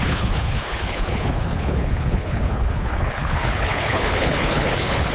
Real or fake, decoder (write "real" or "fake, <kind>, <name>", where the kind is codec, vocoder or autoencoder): fake, codec, HILCodec